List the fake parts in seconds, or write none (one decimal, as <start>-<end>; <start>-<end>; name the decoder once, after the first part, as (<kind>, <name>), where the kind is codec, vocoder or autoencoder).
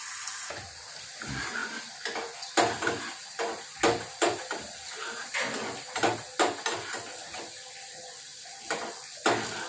none